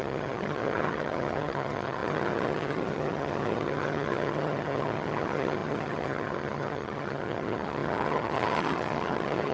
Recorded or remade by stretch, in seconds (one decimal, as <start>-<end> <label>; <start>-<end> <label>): 0.0-9.5 remade